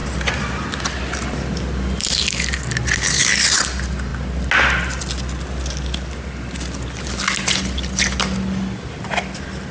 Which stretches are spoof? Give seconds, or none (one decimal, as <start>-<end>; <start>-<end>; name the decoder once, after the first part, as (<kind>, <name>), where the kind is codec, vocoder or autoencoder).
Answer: none